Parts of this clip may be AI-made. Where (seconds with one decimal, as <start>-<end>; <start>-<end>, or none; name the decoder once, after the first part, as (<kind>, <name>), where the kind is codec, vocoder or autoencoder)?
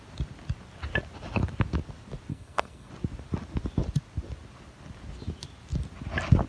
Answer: 2.3-2.9 (codec, SNAC)